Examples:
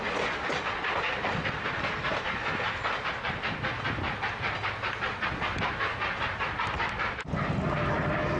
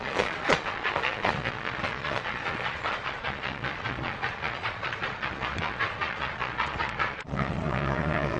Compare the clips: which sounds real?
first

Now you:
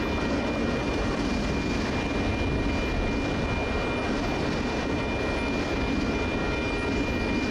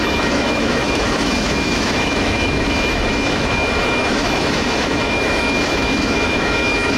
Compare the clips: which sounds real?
first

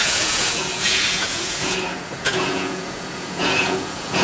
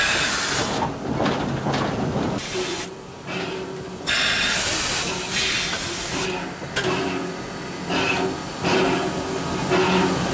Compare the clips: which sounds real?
second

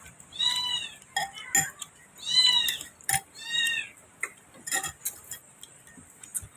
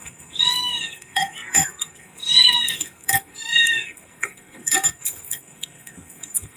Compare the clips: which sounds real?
first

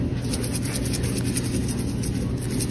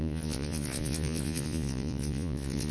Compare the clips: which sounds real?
first